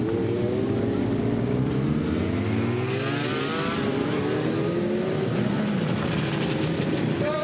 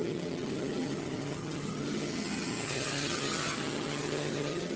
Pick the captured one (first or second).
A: first